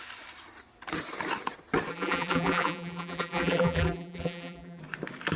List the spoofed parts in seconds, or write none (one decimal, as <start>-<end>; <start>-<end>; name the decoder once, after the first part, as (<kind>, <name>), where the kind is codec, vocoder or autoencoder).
1.9-4.8 (vocoder, BigVGAN v2)

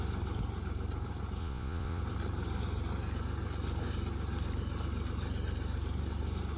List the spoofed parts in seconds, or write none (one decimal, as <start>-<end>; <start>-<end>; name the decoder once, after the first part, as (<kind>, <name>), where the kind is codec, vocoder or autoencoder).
1.4-2.0 (vocoder, Vocos)

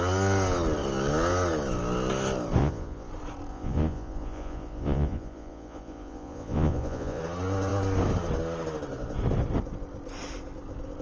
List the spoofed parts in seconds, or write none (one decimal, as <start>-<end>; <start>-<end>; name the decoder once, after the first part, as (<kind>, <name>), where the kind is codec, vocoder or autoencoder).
2.6-3.1 (vocoder, Vocos); 3.5-7.2

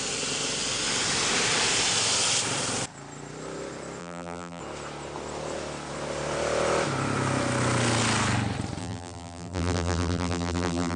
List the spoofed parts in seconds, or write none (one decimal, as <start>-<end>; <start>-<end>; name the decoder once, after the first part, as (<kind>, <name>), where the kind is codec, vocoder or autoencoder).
4.0-4.6 (vocoder, BigVGAN v2); 8.8-11.0

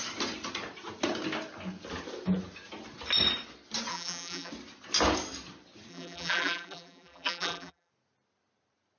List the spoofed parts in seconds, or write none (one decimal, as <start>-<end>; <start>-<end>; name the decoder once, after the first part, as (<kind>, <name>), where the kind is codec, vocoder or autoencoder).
3.9-4.5 (vocoder, BigVGAN v2); 5.9-7.9

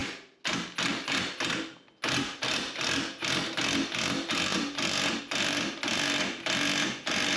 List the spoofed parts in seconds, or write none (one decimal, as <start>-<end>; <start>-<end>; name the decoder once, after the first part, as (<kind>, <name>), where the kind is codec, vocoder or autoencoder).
none

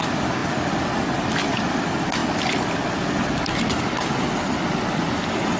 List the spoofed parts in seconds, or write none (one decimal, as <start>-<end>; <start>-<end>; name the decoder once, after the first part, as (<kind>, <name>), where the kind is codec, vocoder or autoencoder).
none

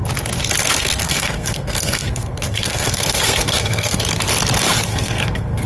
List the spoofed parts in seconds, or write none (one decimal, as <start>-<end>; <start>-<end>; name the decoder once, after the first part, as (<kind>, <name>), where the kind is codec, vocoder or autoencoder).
0.6-4.0 (codec, SNAC); 4.9-5.7